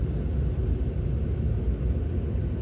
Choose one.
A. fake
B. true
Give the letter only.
B